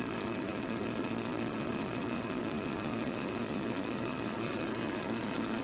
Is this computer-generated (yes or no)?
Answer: yes